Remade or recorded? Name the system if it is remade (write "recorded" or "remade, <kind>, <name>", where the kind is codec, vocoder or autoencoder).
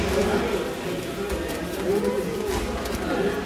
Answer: recorded